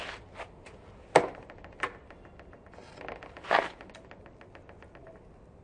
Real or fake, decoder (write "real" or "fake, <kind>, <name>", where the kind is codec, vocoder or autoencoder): real